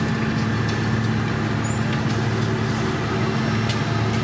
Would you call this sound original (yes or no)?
yes